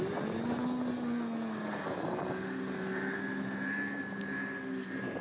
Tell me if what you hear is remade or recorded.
recorded